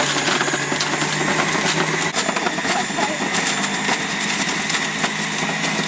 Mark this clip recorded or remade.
recorded